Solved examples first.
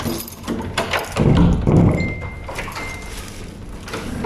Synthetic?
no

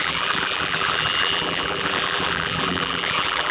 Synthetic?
yes